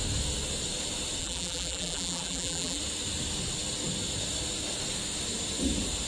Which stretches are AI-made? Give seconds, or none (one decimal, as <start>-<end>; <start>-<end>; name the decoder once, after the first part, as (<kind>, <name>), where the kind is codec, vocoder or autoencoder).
1.2-2.8 (vocoder, BigVGAN v2)